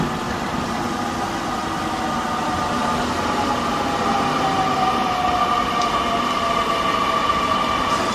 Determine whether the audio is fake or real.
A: real